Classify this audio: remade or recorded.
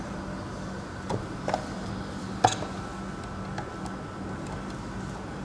recorded